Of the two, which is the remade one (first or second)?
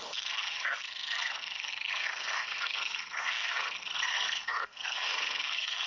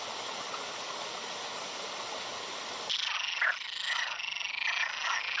first